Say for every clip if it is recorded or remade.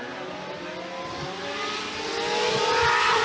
recorded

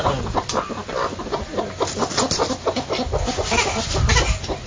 recorded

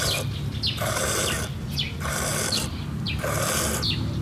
recorded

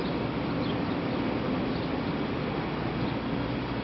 recorded